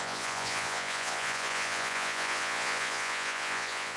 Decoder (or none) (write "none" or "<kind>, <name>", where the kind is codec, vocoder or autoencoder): vocoder, Vocos